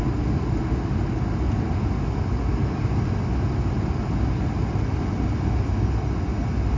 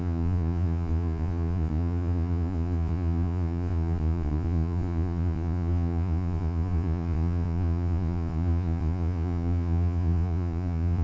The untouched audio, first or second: first